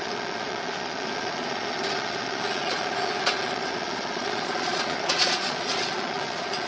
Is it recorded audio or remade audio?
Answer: remade